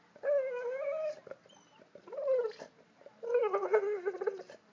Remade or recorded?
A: recorded